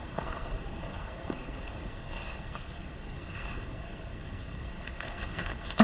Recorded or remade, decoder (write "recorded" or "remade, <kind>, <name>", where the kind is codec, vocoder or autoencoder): remade, codec, SNAC